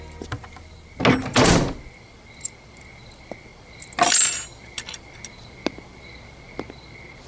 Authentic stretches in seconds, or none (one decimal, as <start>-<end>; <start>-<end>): 0.0-7.3